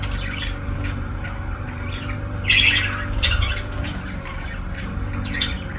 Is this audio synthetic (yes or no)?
yes